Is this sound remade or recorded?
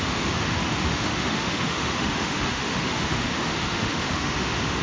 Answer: remade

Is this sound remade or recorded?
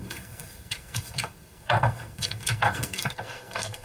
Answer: remade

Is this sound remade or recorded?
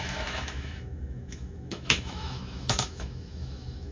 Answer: remade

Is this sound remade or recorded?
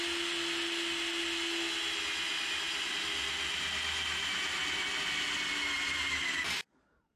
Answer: recorded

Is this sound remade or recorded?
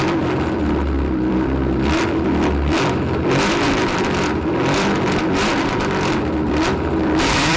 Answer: remade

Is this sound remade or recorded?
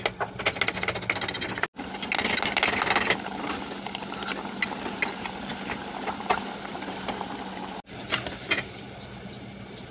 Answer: recorded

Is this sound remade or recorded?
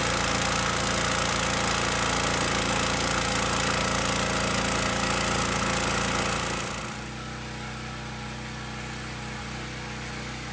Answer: recorded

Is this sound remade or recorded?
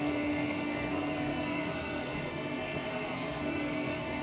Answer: remade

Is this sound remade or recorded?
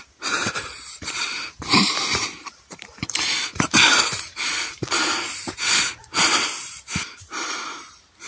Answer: remade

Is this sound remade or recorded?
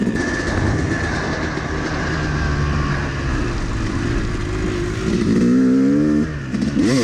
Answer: recorded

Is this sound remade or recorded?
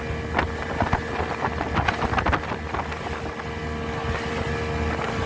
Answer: recorded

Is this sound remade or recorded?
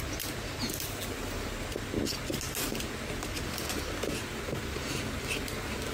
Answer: recorded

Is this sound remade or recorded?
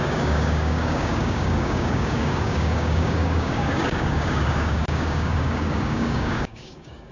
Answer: remade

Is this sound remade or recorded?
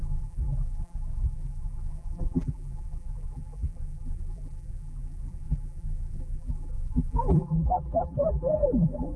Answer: remade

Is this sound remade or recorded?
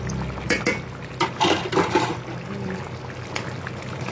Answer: recorded